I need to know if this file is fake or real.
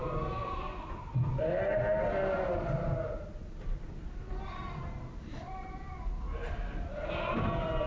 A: real